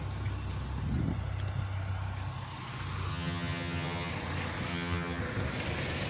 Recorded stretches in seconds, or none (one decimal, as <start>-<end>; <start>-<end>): 0.0-3.1; 4.1-4.7; 5.2-6.1